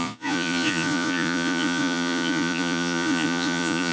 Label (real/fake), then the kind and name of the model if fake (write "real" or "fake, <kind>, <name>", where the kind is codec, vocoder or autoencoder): fake, vocoder, Vocos